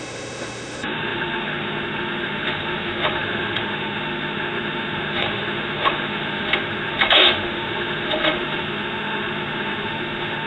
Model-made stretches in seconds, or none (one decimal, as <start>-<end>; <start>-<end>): 0.0-10.5